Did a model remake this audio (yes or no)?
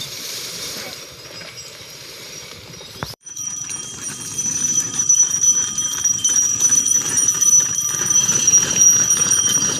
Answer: yes